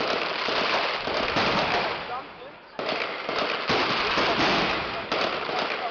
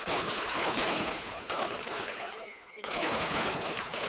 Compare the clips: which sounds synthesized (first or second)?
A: second